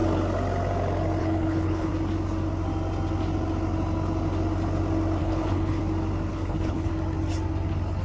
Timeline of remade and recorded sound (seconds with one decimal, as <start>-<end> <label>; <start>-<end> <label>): 0.0-1.2 recorded; 1.2-1.9 remade; 1.9-5.2 recorded; 5.2-5.8 remade; 5.8-6.3 recorded; 6.3-6.9 remade; 6.9-8.0 recorded